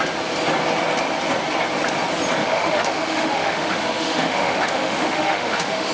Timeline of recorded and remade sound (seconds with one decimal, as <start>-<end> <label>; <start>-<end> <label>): 0.0-2.4 recorded; 2.4-5.9 remade